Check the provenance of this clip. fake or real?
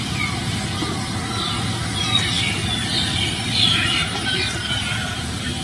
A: real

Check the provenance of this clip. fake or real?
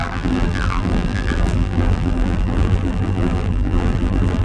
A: fake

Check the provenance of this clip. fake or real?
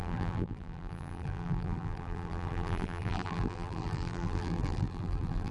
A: fake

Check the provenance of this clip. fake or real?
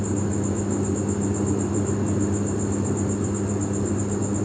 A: real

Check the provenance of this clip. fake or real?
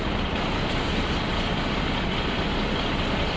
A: fake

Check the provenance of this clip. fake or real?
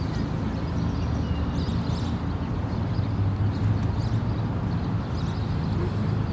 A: real